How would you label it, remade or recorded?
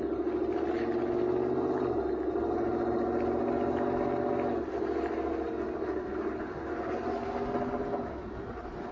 recorded